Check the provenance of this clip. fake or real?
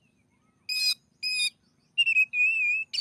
real